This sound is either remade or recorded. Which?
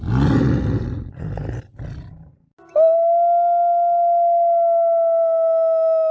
recorded